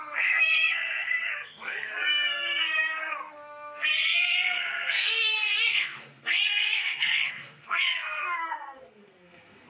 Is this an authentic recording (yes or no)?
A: no